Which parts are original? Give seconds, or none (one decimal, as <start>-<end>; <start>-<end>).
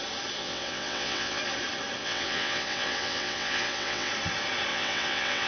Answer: 0.0-0.4; 1.4-2.0; 4.1-4.7